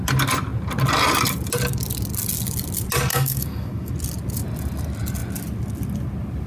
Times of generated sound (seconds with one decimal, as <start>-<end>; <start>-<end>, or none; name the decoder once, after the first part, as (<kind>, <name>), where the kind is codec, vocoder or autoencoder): 3.1-3.9 (codec, DAC)